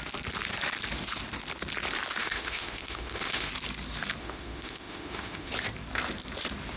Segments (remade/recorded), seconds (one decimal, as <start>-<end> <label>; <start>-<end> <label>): 0.0-2.2 recorded; 2.2-3.5 remade; 3.5-4.2 recorded; 4.2-5.5 remade; 5.5-6.8 recorded